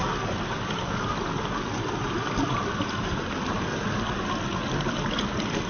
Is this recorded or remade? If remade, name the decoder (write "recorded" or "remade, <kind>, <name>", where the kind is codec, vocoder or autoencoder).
recorded